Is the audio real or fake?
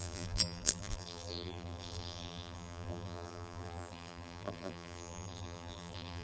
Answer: fake